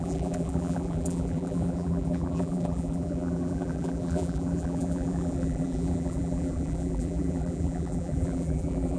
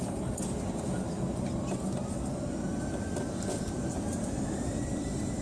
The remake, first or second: first